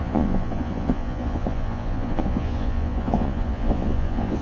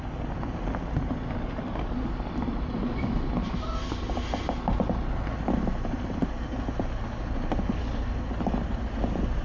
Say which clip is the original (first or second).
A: second